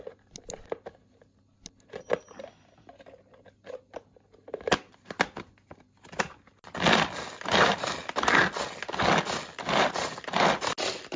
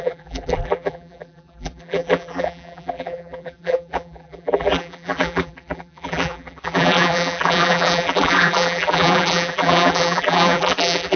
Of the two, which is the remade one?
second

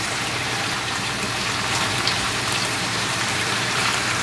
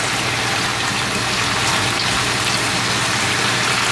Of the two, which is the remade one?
first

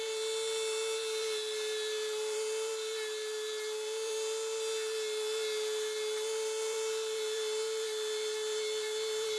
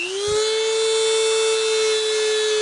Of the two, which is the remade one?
first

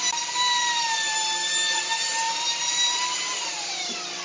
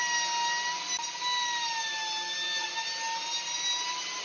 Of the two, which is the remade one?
first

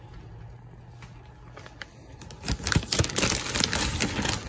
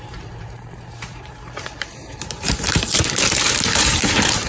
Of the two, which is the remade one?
second